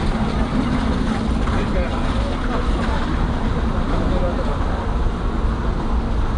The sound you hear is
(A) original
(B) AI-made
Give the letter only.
A